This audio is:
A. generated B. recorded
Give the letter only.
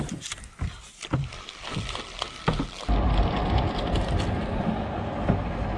B